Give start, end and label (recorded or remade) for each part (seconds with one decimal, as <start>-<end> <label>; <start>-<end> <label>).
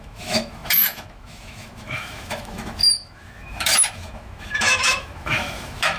0.0-6.0 remade